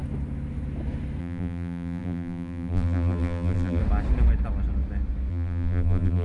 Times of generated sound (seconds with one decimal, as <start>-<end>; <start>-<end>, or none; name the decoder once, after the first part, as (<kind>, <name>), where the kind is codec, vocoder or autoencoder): 1.2-3.8 (vocoder, BigVGAN v2); 5.3-6.2